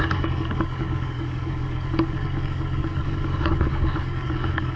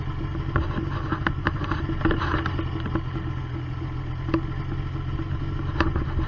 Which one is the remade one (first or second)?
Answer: first